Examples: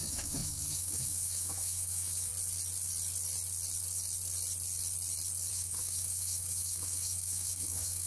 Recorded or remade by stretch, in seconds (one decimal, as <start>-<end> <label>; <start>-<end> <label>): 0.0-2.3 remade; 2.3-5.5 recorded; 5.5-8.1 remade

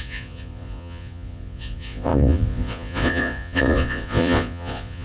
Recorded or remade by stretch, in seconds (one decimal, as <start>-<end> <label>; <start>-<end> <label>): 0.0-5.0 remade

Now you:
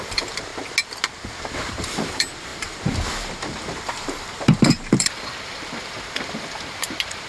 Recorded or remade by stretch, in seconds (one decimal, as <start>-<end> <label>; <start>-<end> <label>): 0.0-0.5 remade; 0.5-1.4 recorded; 1.4-7.3 remade

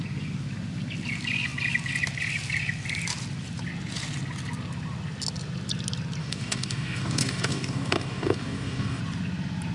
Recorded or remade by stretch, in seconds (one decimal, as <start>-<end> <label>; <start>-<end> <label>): 0.0-6.2 recorded; 6.2-9.0 remade; 9.0-9.7 recorded

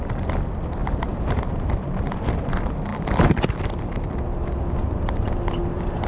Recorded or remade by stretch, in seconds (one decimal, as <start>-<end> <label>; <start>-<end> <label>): 0.0-0.8 recorded; 0.8-2.5 remade; 2.5-6.1 recorded